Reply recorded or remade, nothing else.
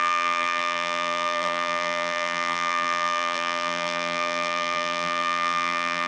remade